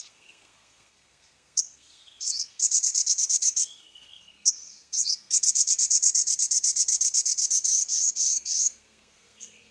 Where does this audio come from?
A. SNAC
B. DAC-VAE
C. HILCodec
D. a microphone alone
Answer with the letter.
A